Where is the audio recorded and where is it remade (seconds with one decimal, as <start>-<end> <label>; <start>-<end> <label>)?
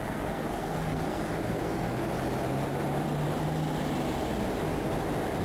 0.0-2.0 remade; 2.0-5.4 recorded